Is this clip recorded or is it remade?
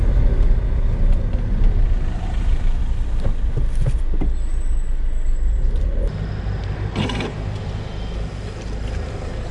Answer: recorded